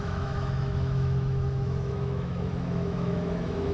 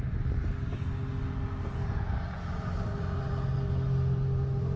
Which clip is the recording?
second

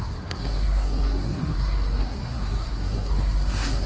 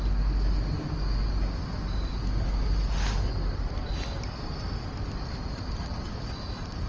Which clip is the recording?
second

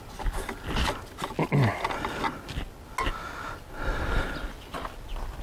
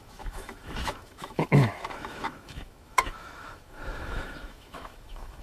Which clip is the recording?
first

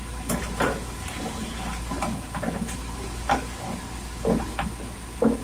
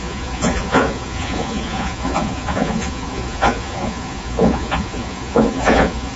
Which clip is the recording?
first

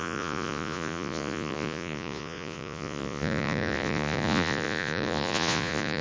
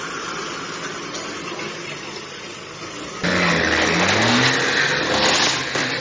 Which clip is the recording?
second